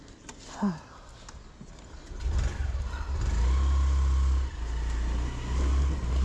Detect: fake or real real